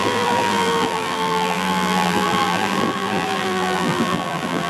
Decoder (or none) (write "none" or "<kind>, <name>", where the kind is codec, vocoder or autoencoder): vocoder, BigVGAN v2